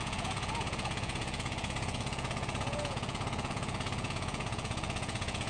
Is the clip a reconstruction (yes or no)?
yes